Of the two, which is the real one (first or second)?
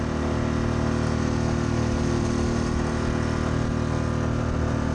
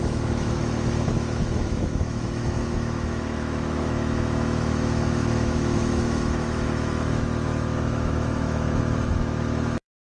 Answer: first